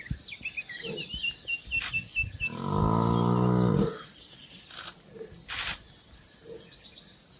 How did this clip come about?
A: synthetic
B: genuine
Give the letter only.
B